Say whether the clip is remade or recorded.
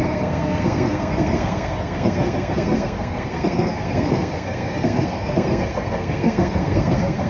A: remade